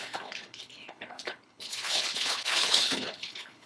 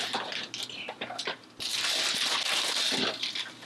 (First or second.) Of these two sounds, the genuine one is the second